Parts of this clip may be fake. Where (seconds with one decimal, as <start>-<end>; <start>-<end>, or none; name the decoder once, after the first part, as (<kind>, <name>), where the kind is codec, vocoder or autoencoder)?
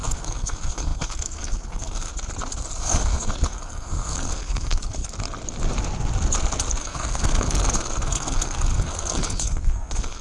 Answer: 0.0-2.1 (codec, SNAC); 2.8-5.0; 6.8-10.2